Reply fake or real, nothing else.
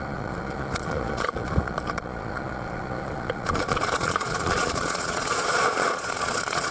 fake